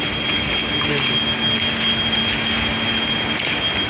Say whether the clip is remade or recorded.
recorded